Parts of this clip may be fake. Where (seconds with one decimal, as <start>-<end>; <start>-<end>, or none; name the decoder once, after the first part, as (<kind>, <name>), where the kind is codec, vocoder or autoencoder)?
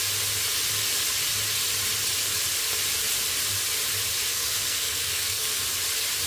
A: 4.3-5.6 (codec, SNAC)